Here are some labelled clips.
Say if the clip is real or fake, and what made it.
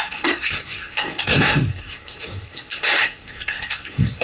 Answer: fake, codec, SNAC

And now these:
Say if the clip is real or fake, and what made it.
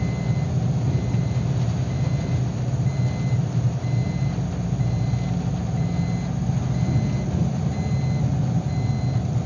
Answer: real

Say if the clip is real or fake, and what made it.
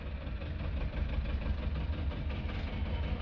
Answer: real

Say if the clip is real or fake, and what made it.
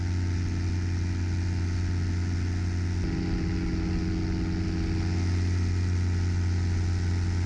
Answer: real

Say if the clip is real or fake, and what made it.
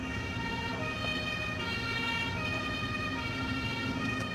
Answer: real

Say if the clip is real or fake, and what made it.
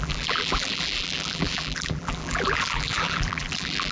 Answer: fake, vocoder, BigVGAN v2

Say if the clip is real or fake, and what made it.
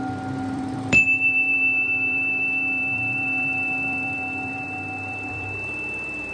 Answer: fake, vocoder, BigVGAN v2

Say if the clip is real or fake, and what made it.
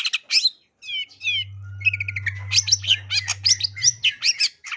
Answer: real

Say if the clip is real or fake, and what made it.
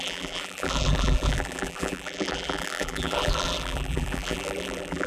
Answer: fake, vocoder, BigVGAN v2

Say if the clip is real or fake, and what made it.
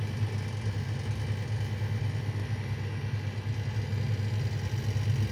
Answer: real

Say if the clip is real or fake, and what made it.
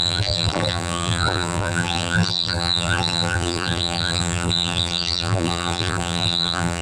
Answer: fake, vocoder, BigVGAN v2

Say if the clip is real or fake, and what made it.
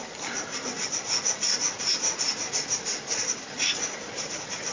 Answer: real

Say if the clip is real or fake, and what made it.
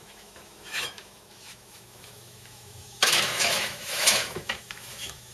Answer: fake, autoencoder, DAC-VAE